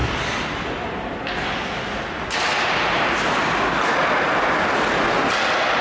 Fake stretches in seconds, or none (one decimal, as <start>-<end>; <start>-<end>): none